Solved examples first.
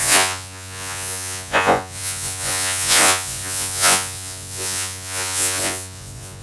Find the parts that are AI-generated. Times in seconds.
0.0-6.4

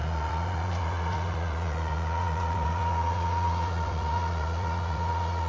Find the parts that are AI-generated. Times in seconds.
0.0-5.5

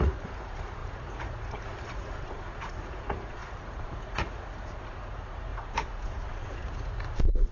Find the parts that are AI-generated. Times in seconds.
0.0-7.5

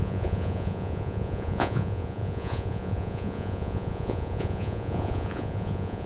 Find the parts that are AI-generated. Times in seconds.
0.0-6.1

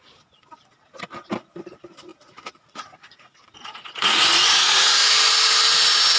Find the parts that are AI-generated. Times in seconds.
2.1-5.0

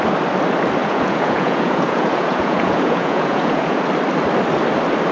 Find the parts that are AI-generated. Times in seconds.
0.8-3.8